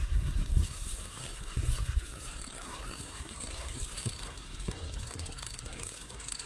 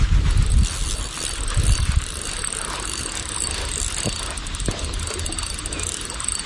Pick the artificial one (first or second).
first